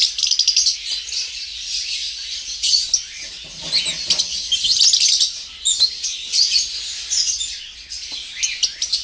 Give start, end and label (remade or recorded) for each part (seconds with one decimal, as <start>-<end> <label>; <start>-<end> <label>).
0.0-9.0 recorded